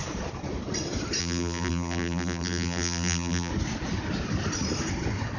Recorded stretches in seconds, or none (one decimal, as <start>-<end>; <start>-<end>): 0.0-1.2; 3.5-5.4